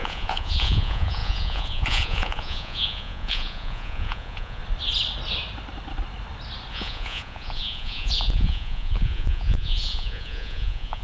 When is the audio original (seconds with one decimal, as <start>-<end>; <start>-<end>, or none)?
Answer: 4.6-6.7